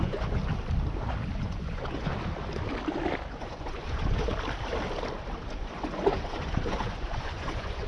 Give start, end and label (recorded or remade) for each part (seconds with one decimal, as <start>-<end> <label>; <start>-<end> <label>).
0.0-0.4 remade; 0.4-1.4 recorded; 1.4-2.1 remade; 2.1-3.3 recorded; 3.3-4.3 remade; 4.3-5.5 recorded; 5.5-7.9 remade